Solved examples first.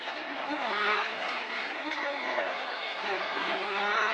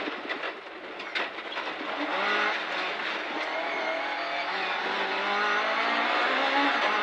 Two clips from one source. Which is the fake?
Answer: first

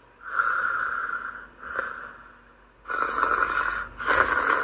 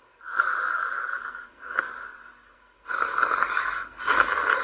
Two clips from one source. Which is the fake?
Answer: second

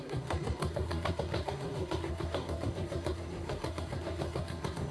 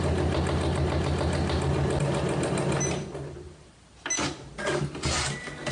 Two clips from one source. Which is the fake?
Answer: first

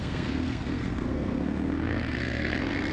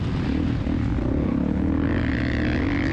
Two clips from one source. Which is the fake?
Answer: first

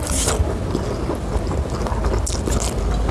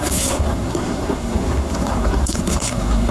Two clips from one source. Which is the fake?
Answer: second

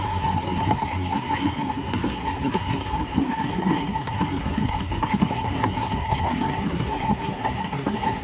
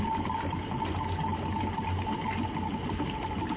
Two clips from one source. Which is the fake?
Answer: first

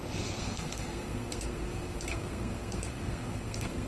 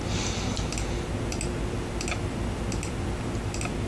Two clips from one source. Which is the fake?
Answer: first